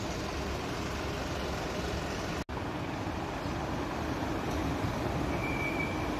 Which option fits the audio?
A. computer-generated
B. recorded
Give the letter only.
B